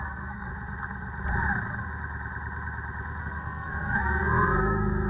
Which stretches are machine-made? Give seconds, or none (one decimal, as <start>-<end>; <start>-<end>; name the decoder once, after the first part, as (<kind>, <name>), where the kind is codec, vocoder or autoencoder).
0.0-0.5 (codec, SNAC); 3.2-5.1